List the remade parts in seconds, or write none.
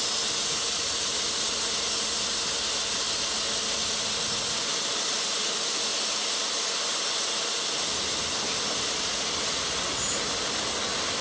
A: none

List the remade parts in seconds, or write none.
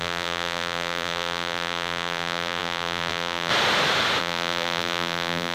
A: 0.0-3.5 (vocoder, BigVGAN v2); 4.2-5.5